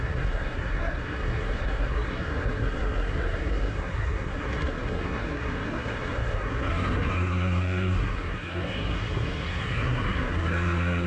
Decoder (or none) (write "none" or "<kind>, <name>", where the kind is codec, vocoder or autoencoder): codec, SNAC